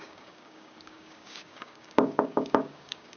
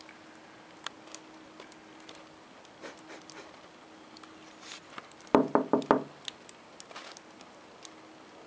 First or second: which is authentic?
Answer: second